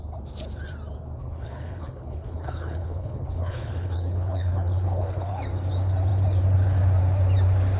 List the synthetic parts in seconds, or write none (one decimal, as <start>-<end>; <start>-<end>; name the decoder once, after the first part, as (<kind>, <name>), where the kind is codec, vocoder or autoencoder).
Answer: 1.2-5.4 (codec, HILCodec)